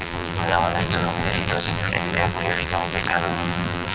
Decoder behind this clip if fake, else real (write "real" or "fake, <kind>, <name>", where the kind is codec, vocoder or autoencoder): fake, vocoder, BigVGAN v2